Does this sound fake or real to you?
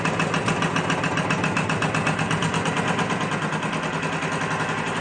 real